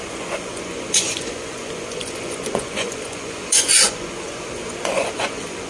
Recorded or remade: remade